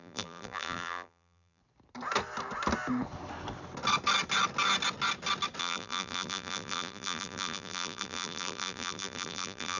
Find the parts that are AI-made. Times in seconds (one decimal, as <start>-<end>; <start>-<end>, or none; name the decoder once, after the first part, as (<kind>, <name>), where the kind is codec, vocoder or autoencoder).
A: 0.0-1.6 (vocoder, BigVGAN v2); 5.6-9.8